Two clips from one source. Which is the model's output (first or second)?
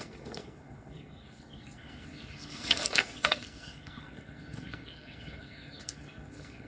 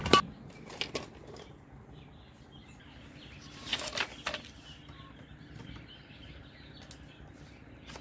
first